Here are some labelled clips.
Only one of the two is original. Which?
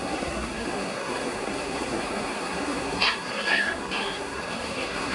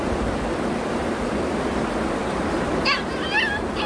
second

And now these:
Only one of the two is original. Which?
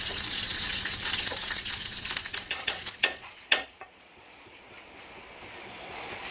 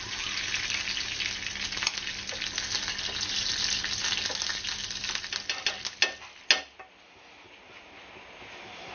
second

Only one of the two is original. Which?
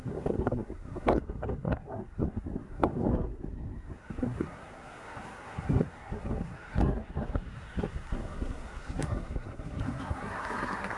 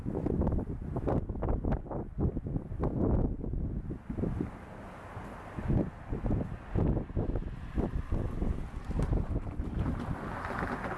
second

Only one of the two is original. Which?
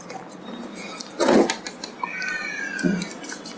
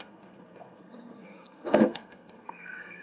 first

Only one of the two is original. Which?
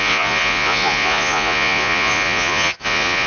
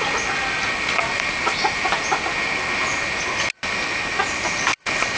second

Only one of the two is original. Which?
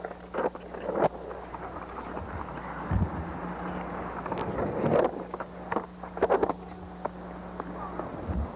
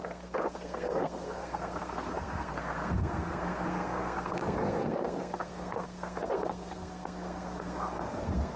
first